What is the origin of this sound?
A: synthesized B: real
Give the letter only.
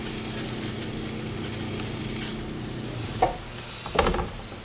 B